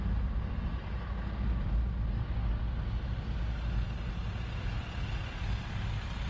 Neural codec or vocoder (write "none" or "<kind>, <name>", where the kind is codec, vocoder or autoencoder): none